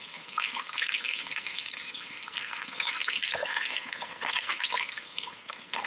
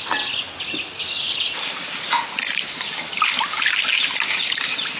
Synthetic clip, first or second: first